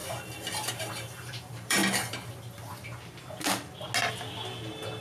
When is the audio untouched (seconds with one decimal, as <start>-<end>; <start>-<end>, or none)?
1.8-5.0